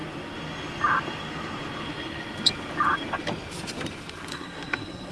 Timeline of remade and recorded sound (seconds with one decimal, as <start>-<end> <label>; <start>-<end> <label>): 0.0-4.3 recorded; 4.3-5.1 remade